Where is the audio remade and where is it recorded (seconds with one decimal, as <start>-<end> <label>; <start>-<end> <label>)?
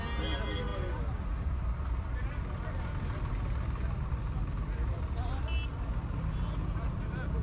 0.0-7.4 recorded